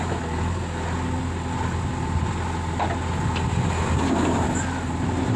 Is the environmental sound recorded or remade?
recorded